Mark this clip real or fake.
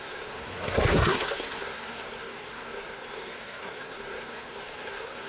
fake